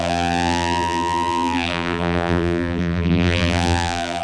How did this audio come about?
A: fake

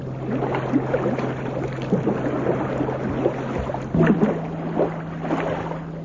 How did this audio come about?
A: real